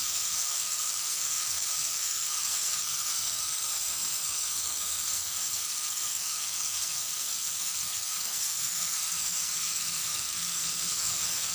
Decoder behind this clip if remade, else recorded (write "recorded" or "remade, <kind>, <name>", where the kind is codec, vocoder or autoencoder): remade, codec, SNAC